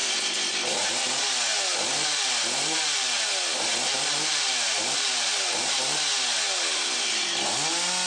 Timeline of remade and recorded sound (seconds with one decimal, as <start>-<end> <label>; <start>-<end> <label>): 0.0-0.9 remade; 0.9-1.7 recorded; 1.7-5.1 remade; 5.1-8.1 recorded